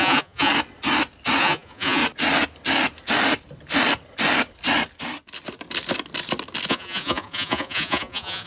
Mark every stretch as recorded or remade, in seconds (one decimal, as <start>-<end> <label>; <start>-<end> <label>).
0.0-0.5 remade; 0.5-1.4 recorded; 1.4-2.0 remade; 2.0-6.7 recorded; 6.7-8.5 remade